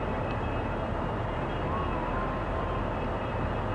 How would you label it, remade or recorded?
recorded